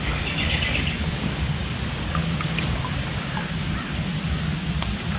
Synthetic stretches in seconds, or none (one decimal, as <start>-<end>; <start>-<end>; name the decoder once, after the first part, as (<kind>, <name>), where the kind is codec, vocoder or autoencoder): 0.0-2.2 (codec, DAC)